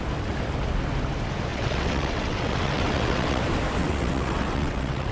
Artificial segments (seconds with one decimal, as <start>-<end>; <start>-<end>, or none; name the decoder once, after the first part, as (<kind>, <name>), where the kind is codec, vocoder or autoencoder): 1.5-3.4 (vocoder, WaveNeXt); 3.8-5.1